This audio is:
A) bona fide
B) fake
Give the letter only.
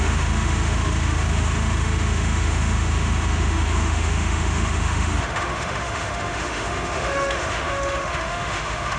B